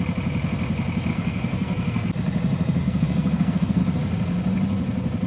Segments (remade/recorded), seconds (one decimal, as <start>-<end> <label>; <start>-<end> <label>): 0.0-1.1 recorded; 1.1-2.1 remade; 2.1-2.8 recorded; 2.8-3.8 remade; 3.8-5.3 recorded